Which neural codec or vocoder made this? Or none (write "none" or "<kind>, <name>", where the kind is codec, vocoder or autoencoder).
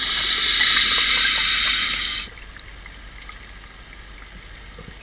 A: none